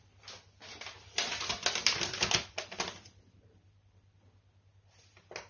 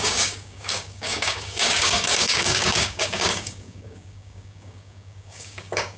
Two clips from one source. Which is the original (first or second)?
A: first